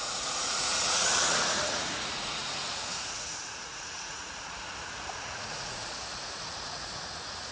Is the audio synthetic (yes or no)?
yes